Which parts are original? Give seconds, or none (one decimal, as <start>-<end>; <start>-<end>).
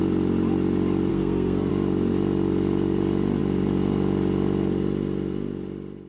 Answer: 0.0-1.1; 1.7-6.1